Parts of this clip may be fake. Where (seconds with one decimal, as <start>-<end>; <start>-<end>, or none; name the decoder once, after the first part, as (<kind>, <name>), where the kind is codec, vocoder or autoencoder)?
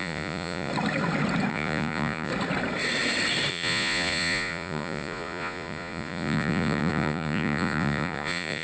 0.0-0.7 (vocoder, Vocos); 1.5-2.3; 3.5-8.6